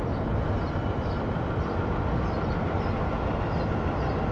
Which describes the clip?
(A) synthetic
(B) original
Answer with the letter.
B